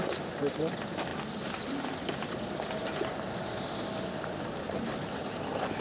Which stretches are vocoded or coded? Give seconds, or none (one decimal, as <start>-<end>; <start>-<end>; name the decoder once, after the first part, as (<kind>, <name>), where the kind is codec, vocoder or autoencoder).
none